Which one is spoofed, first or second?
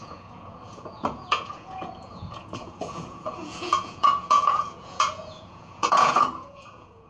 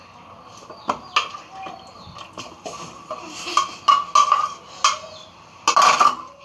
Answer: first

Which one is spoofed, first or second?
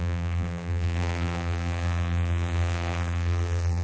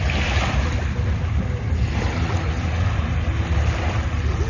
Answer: first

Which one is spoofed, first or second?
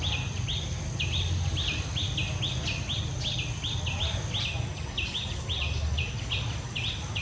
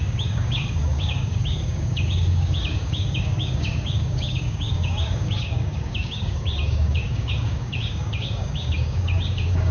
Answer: second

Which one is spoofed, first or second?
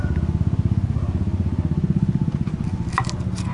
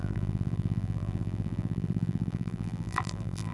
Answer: second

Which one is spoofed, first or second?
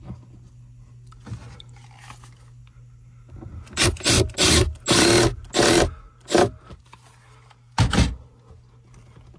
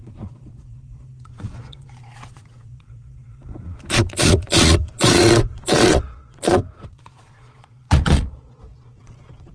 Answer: second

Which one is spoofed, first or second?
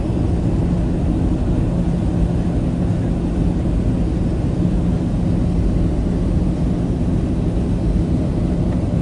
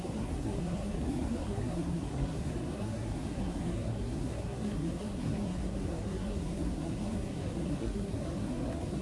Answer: second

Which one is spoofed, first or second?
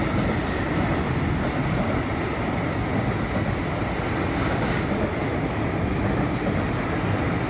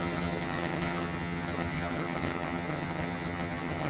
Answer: second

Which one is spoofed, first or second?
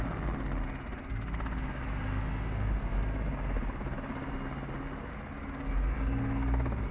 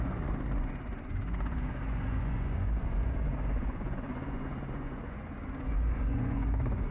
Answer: second